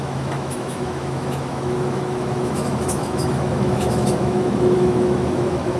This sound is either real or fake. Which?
fake